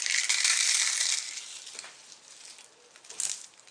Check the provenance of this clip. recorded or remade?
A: recorded